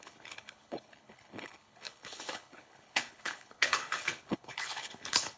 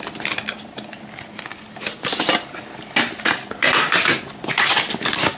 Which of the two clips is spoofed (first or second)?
first